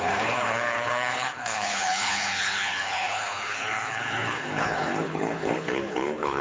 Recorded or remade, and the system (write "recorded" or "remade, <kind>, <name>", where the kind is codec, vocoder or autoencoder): remade, codec, HILCodec